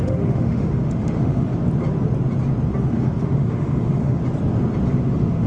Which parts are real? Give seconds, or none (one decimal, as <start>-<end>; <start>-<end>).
1.5-2.8; 4.2-4.9